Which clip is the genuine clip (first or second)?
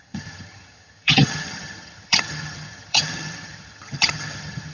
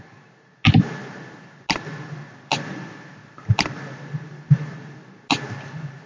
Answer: second